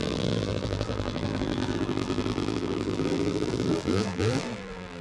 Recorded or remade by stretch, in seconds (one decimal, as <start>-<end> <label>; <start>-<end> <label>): 0.0-5.0 remade